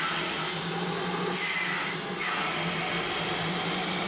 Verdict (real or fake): real